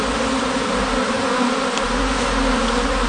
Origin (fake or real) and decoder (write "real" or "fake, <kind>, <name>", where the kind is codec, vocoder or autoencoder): real